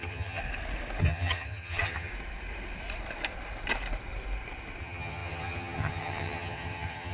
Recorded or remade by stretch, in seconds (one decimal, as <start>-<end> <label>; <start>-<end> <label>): 0.0-0.4 remade; 0.4-1.0 recorded; 1.0-2.1 remade; 2.1-4.8 recorded; 4.8-7.1 remade

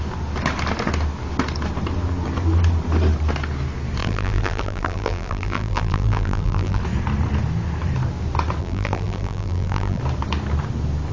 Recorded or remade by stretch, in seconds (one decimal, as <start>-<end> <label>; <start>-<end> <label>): 0.0-4.0 recorded; 4.0-6.8 remade; 6.8-8.6 recorded; 8.6-10.0 remade; 10.0-11.1 recorded

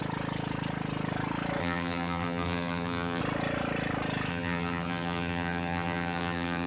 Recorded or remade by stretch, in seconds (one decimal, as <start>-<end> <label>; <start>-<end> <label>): 0.0-1.6 recorded; 1.6-3.2 remade; 3.2-4.3 recorded; 4.3-6.7 remade

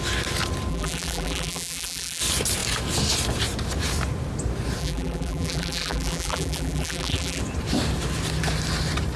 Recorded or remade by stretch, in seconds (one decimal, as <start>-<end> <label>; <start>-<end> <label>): 0.0-0.7 recorded; 0.7-2.2 remade; 2.2-4.8 recorded; 4.8-7.4 remade; 7.4-9.2 recorded

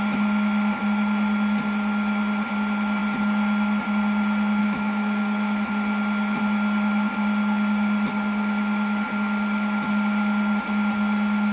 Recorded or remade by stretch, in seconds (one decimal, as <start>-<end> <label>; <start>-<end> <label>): 0.0-4.6 recorded; 4.6-5.7 remade; 5.7-11.5 recorded

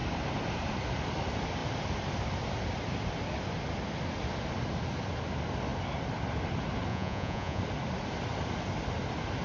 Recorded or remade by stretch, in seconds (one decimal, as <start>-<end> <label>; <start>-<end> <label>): 0.0-6.9 recorded; 6.9-7.6 remade; 7.6-9.4 recorded

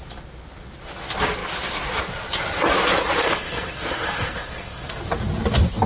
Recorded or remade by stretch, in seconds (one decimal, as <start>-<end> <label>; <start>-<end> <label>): 0.0-3.2 recorded; 3.2-4.9 remade; 4.9-5.9 recorded

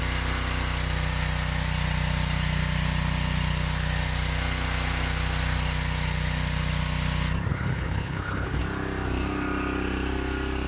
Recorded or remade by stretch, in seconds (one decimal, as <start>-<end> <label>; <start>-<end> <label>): 0.0-7.5 recorded; 7.5-8.6 remade; 8.6-10.7 recorded